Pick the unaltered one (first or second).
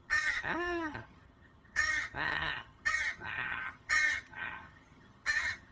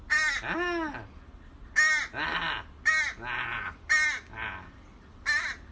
second